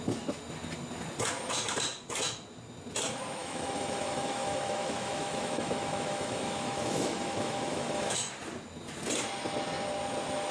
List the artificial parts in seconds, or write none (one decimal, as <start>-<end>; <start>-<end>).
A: 3.4-8.3